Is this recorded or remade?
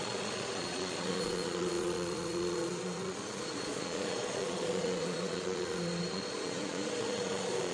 remade